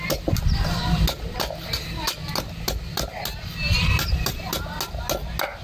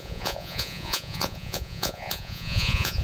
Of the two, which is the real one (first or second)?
first